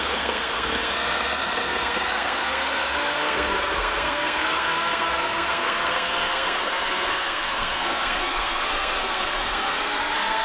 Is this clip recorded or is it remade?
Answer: remade